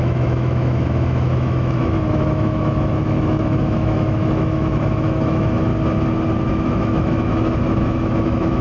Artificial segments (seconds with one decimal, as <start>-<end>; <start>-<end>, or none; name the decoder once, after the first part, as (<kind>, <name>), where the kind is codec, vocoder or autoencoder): 0.0-5.7 (autoencoder, DAC-VAE); 6.5-8.6

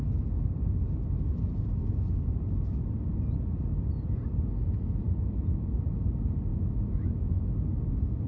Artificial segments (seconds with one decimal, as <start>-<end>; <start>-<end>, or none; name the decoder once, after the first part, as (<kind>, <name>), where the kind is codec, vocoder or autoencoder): 6.5-7.4 (autoencoder, DAC-VAE)

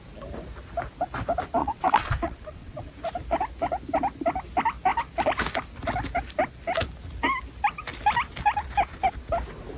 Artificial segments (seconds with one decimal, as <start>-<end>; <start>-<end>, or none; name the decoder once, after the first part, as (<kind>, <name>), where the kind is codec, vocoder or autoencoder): 1.6-2.9 (vocoder, WaveNeXt)

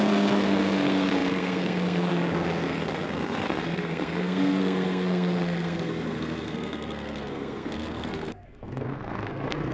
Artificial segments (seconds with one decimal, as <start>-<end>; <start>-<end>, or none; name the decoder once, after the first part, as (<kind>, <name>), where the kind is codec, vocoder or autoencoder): 0.0-9.7 (codec, SNAC)

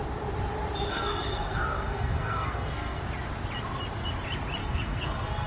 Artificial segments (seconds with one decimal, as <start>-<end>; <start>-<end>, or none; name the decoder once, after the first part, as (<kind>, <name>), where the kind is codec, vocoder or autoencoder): 0.9-3.0 (codec, SNAC); 4.6-5.5

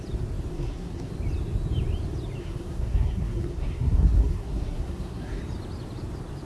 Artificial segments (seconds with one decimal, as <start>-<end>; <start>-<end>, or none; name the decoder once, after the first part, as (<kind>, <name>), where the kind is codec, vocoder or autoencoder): 0.5-1.1 (codec, SNAC); 2.4-5.4